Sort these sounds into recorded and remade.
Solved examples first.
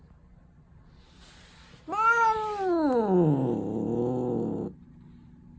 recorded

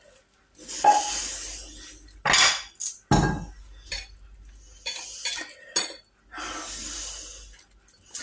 recorded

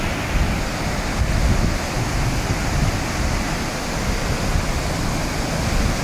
recorded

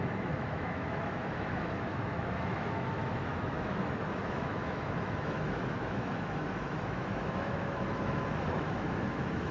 remade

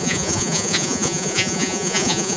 remade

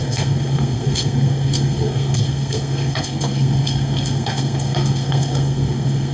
remade